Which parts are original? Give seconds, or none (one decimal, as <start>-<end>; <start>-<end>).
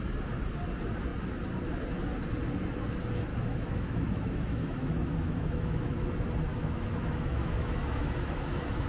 0.0-3.3; 6.1-6.5